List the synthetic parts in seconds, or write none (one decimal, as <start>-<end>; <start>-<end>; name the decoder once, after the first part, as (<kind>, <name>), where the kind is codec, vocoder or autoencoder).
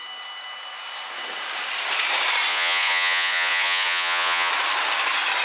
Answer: 2.5-4.5 (vocoder, Vocos)